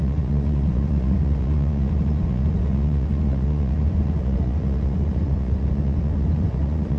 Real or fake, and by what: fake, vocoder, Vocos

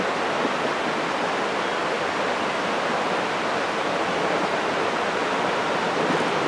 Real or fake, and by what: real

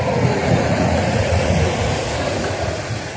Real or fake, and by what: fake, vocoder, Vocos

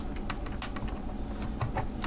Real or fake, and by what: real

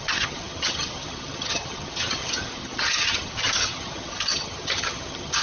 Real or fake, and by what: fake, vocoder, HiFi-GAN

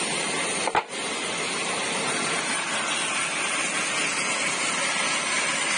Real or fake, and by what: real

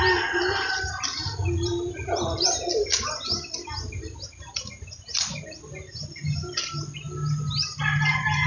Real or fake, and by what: real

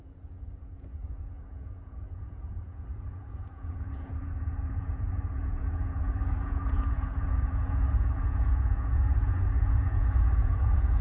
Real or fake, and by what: fake, vocoder, Vocos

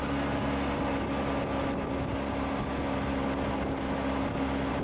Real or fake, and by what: real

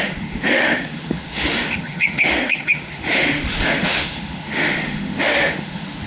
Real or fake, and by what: fake, autoencoder, DAC-VAE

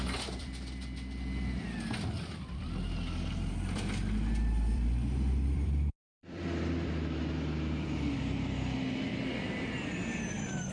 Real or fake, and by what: fake, vocoder, BigVGAN v2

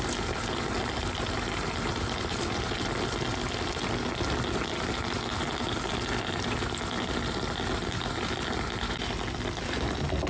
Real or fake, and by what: real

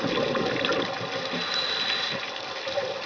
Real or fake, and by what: real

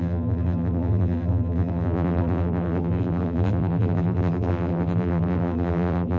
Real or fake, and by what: fake, vocoder, BigVGAN v2